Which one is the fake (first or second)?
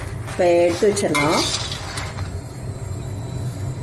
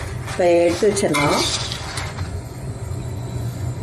second